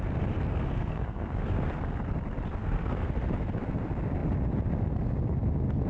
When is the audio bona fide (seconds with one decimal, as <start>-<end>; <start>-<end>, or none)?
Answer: 0.0-0.5; 1.4-2.6; 3.1-5.9